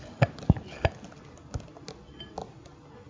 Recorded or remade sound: recorded